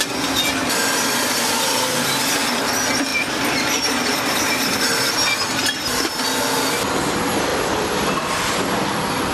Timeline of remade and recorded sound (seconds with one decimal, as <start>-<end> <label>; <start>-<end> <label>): 0.0-3.1 recorded; 3.1-5.1 remade; 5.1-7.5 recorded; 7.5-8.5 remade; 8.5-9.3 recorded